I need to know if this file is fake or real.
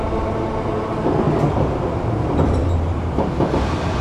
real